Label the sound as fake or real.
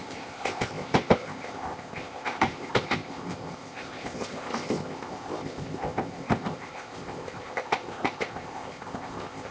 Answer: fake